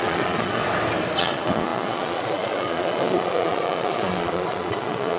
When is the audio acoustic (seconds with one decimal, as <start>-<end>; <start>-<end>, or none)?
0.6-1.2